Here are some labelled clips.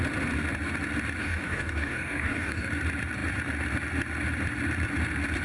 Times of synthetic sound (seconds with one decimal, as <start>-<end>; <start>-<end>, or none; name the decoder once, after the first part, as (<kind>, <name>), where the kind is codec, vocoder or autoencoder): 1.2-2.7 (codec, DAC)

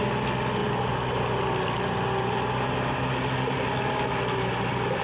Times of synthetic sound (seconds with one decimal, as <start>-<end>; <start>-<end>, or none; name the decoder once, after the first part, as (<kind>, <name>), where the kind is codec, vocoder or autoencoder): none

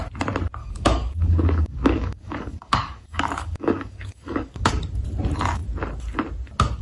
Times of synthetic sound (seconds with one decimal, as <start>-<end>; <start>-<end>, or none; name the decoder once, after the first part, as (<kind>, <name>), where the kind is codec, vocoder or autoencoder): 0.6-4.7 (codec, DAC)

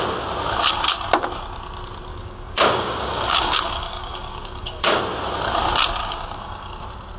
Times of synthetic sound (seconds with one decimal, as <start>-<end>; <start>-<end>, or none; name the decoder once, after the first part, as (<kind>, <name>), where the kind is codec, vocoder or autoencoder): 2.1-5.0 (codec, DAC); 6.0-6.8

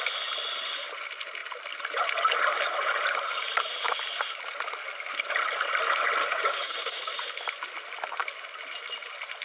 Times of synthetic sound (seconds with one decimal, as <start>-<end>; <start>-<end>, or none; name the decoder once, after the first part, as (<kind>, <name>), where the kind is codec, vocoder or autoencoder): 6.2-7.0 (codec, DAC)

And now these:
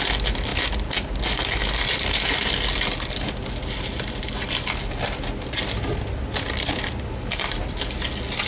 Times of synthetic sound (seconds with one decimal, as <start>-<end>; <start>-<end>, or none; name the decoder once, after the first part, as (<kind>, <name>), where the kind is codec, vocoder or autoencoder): none

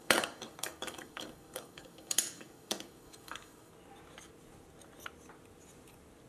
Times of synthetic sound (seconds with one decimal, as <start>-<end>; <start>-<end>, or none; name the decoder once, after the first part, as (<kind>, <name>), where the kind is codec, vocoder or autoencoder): 0.0-3.7 (codec, DAC)